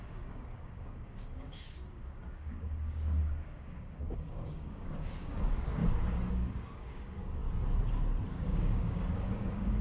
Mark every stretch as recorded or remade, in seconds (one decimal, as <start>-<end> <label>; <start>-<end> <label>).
0.0-5.8 remade; 5.8-6.3 recorded; 6.3-7.4 remade; 7.4-8.3 recorded; 8.3-9.8 remade